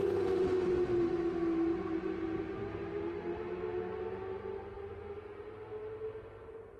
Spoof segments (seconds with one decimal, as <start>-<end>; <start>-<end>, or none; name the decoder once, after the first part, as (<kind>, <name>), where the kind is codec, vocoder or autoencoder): none